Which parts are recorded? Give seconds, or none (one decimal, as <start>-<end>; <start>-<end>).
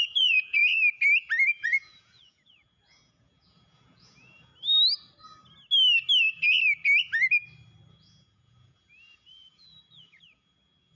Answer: 0.6-1.5; 4.5-7.9